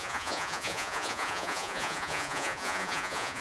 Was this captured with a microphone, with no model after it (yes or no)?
no